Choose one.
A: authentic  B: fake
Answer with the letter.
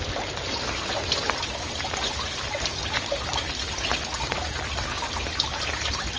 A